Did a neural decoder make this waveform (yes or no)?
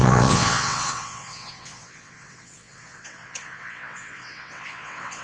yes